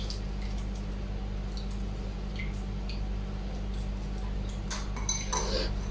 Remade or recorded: recorded